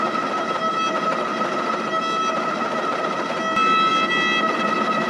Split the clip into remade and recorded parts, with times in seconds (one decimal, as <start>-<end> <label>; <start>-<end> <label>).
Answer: 0.0-5.1 recorded